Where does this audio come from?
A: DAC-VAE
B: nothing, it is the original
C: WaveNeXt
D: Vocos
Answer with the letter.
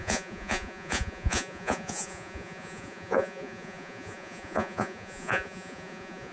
D